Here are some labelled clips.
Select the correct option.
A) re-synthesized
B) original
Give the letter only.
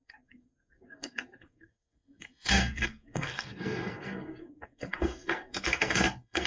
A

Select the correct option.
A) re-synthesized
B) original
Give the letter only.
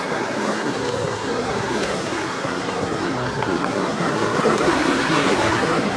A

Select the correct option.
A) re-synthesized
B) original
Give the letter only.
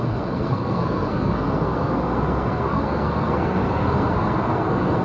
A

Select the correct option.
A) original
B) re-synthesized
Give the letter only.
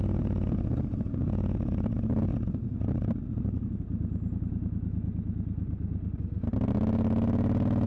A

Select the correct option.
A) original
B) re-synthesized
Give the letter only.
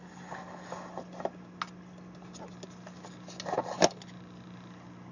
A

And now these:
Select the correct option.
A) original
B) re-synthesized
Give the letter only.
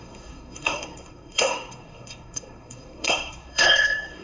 B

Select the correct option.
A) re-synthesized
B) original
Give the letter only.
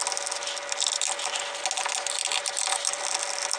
B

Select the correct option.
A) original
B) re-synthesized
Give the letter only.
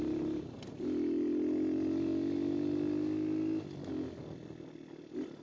A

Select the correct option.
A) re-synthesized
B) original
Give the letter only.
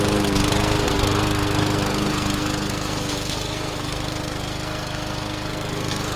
A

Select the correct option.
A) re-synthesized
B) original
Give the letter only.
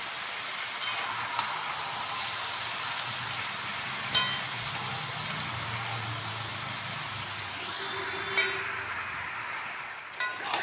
B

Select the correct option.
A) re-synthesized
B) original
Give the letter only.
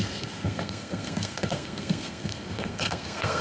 A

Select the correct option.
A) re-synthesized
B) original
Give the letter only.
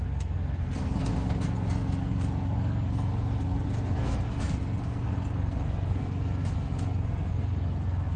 A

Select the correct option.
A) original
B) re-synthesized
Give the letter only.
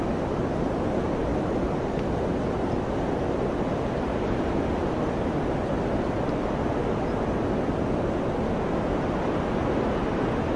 A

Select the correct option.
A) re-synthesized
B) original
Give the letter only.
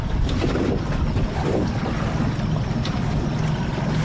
B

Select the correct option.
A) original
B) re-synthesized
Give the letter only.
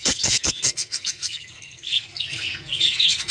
B